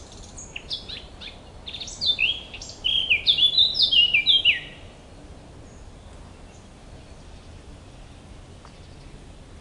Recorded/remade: recorded